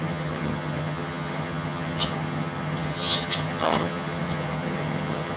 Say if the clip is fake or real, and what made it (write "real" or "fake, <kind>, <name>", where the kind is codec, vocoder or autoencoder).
fake, vocoder, HiFi-GAN